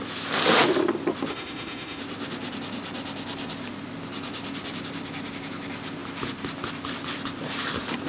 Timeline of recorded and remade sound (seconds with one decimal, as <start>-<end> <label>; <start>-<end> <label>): 0.0-1.3 recorded; 1.3-2.0 remade; 2.0-8.1 recorded